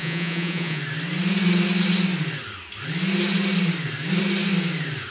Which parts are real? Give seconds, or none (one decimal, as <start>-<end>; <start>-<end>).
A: 0.8-5.1